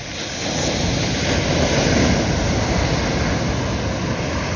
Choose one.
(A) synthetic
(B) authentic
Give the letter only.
B